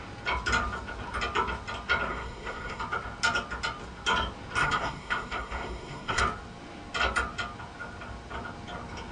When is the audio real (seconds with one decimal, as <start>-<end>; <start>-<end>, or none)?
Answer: 0.0-2.1; 2.8-4.6; 6.2-9.1